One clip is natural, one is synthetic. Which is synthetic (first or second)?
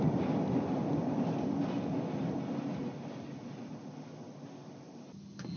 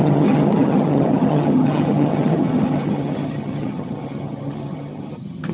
second